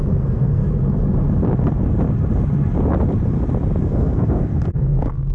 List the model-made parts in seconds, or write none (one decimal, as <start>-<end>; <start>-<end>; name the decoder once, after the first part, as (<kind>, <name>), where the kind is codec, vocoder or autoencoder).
0.0-0.6 (codec, SNAC); 3.8-5.3